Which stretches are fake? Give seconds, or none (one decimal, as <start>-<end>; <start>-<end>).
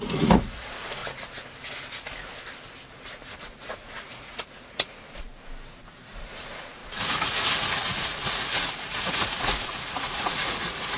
0.0-1.0; 3.4-5.3; 5.8-11.0